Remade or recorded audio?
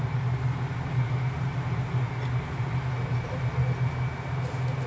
recorded